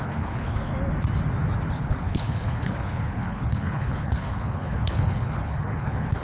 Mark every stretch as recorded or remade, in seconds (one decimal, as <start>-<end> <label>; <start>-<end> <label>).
0.0-0.7 remade; 0.7-1.7 recorded; 1.7-6.2 remade